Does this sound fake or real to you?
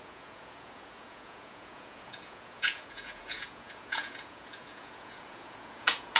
fake